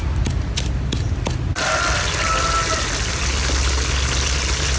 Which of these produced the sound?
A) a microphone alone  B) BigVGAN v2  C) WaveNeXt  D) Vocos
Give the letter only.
A